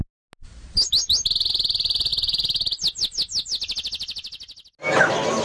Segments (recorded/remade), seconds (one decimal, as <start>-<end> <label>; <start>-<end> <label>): 0.0-5.4 recorded